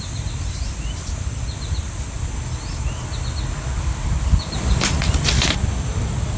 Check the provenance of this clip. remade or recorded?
recorded